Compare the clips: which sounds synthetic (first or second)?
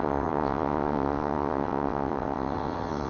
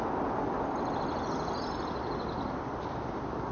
first